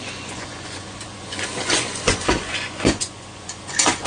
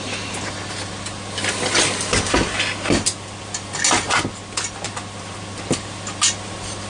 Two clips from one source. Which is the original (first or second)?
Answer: second